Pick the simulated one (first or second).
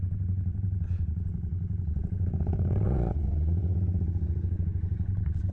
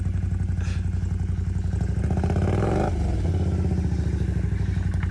first